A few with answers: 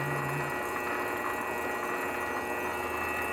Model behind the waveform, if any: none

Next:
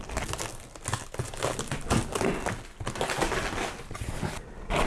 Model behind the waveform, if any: none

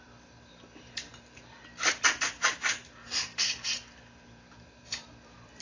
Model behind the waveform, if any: vocoder, BigVGAN v2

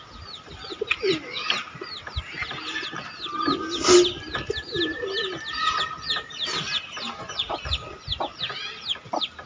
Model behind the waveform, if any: none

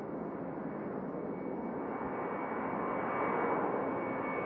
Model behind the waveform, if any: none